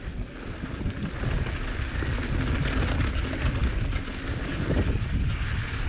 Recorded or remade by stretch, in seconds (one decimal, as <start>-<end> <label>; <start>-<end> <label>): 0.0-5.9 recorded